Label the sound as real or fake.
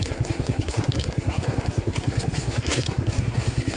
fake